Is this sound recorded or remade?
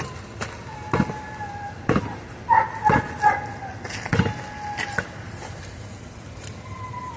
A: recorded